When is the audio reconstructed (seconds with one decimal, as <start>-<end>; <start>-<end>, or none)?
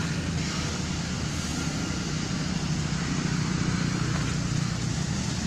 none